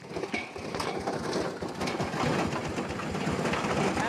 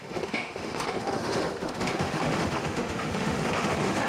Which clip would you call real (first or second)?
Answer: first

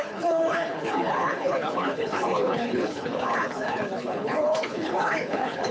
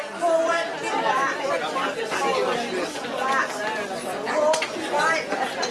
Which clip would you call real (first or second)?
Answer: second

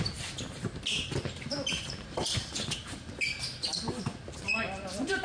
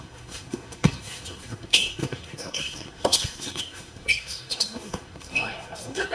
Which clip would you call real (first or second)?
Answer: first